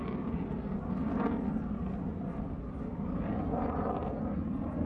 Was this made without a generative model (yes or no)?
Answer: yes